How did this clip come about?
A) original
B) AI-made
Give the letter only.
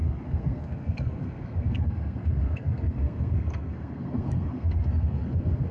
B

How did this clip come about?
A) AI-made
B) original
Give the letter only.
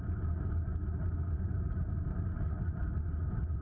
B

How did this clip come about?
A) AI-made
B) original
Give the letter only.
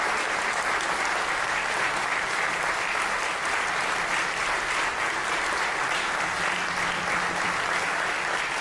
B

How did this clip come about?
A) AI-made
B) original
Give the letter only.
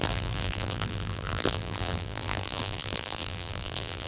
A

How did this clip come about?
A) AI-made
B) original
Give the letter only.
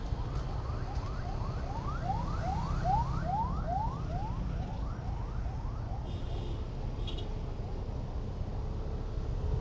B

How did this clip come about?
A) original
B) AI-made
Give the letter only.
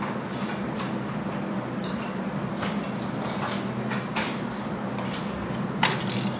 A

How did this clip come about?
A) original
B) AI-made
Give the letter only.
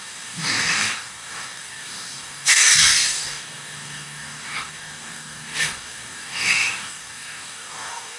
B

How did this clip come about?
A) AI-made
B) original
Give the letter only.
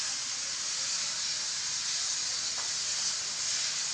B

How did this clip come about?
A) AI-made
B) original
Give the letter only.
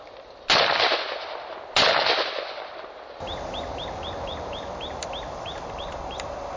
B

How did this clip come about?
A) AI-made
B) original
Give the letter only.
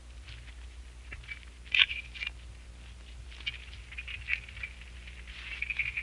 B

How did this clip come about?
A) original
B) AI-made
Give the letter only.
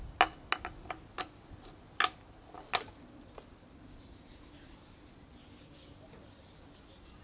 A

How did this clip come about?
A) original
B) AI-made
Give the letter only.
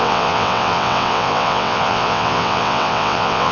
B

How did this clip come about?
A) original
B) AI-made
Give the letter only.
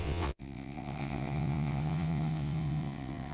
B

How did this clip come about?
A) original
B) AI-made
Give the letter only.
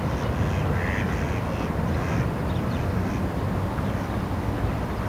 A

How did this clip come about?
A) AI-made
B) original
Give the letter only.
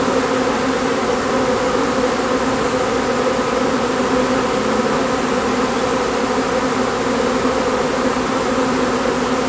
B